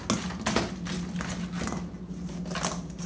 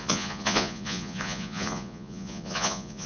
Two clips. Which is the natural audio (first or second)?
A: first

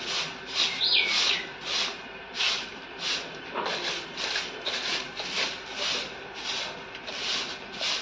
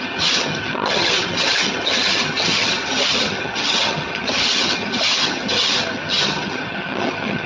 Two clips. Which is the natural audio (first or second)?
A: first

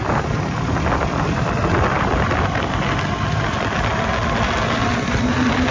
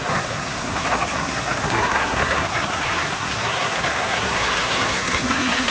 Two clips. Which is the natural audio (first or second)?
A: first